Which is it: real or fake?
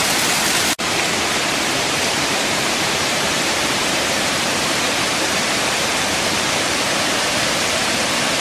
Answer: fake